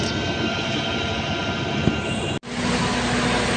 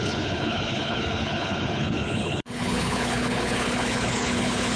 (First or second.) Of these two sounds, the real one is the first